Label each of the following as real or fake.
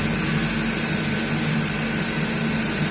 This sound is real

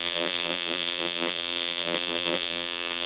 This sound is fake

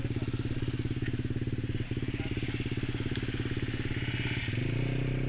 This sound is real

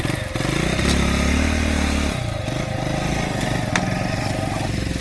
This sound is real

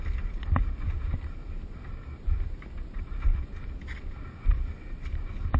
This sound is real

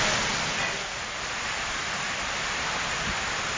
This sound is real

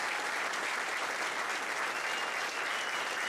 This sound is real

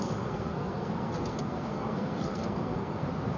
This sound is fake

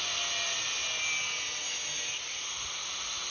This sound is real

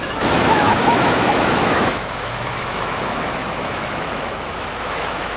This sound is fake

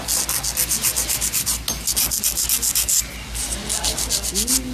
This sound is real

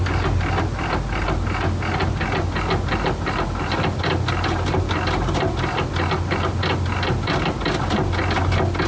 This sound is real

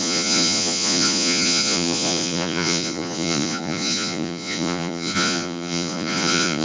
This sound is fake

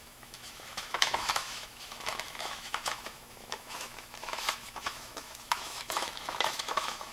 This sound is fake